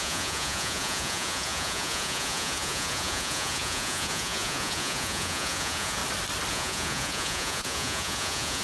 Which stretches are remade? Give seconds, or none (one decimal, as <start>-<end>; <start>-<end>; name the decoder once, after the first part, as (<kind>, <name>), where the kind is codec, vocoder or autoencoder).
0.0-6.0 (vocoder, Vocos); 6.5-8.6